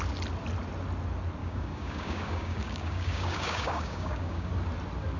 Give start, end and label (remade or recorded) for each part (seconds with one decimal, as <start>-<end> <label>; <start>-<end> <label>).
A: 0.0-1.4 recorded; 1.4-4.5 remade; 4.5-5.2 recorded